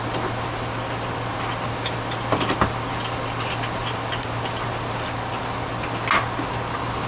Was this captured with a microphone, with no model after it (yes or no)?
yes